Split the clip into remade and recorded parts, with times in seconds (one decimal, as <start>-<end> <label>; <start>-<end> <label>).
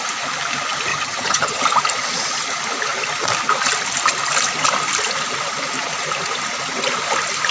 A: 0.0-0.9 recorded; 0.9-1.6 remade; 1.6-7.5 recorded